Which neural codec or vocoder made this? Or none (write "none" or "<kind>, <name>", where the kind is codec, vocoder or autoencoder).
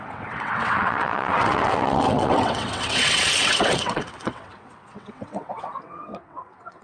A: vocoder, WaveNeXt